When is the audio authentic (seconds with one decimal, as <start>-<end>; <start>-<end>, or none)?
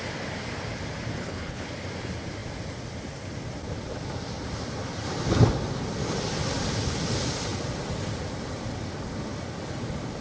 0.0-1.2; 1.7-10.2